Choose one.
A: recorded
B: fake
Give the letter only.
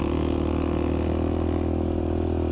A